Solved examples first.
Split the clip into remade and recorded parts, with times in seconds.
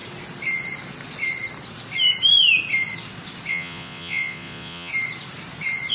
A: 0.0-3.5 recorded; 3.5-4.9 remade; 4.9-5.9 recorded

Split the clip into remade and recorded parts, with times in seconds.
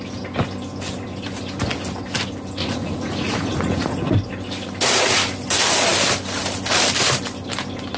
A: 0.0-2.6 recorded; 2.6-4.1 remade; 4.1-8.0 recorded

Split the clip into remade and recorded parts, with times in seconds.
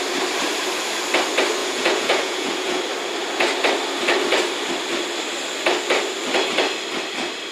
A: 0.0-1.6 recorded; 1.6-2.8 remade; 2.8-7.5 recorded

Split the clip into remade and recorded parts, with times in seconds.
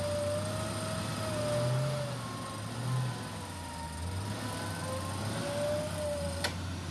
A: 0.0-6.9 recorded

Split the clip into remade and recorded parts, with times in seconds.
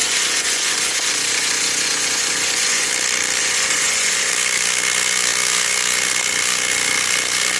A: 0.0-2.9 remade; 2.9-3.4 recorded; 3.4-4.3 remade; 4.3-7.6 recorded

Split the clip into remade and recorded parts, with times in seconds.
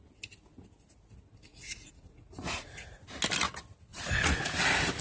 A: 0.0-1.5 recorded; 1.5-3.0 remade; 3.0-3.9 recorded; 3.9-4.6 remade; 4.6-5.0 recorded